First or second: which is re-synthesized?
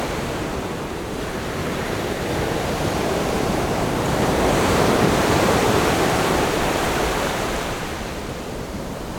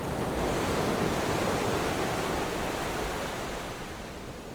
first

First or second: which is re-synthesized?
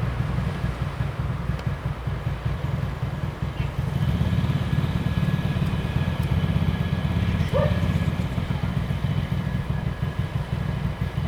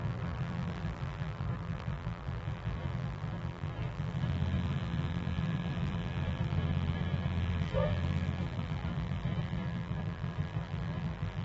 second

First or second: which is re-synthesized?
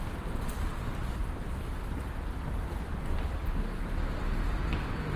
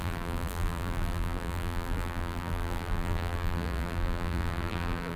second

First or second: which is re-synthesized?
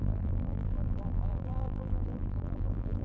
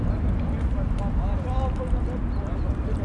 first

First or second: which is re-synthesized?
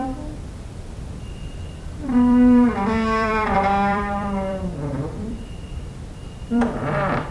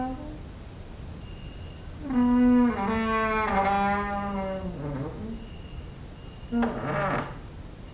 first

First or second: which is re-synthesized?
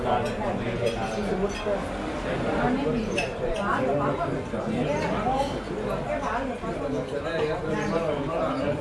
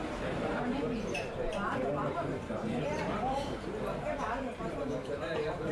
second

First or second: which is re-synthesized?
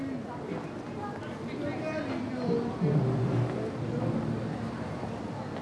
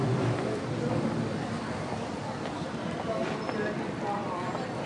second